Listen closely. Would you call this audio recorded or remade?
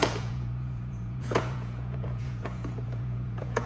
remade